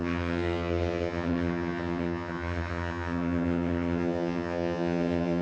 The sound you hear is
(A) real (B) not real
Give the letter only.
B